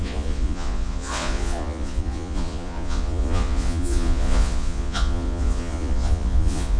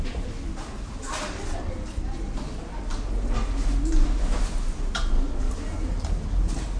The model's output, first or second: first